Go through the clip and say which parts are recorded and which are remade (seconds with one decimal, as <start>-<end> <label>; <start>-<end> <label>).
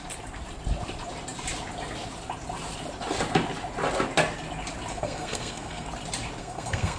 0.0-4.9 recorded; 4.9-5.9 remade; 5.9-6.4 recorded; 6.4-7.0 remade